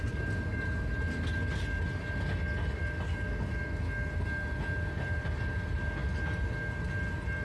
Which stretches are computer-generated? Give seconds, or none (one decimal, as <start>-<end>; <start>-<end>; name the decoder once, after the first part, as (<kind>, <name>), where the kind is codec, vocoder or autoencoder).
none